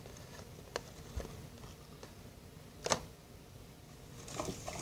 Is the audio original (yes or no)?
yes